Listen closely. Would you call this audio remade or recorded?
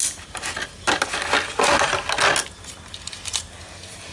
recorded